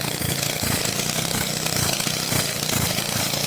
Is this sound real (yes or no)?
no